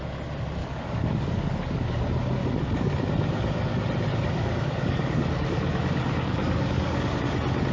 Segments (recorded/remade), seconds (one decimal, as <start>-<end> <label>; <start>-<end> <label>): 0.0-0.6 recorded; 0.6-2.0 remade; 2.0-2.4 recorded; 2.4-3.0 remade; 3.0-4.1 recorded; 4.1-7.2 remade; 7.2-7.7 recorded

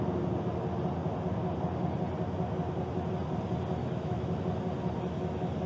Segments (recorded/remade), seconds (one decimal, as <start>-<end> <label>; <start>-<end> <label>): 0.0-3.8 recorded; 3.8-4.4 remade; 4.4-5.7 recorded

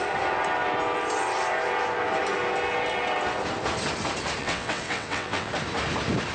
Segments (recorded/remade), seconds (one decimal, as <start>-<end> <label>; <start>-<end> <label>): 0.0-4.4 recorded; 4.4-5.5 remade; 5.5-6.3 recorded